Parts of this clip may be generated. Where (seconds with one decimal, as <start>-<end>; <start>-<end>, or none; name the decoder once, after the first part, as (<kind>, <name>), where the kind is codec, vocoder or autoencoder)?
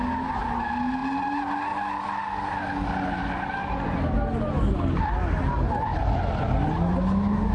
none